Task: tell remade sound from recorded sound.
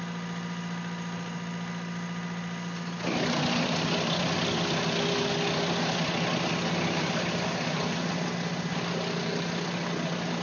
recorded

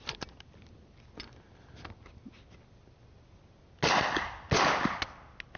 recorded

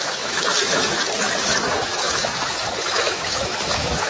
remade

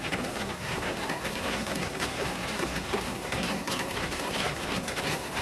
remade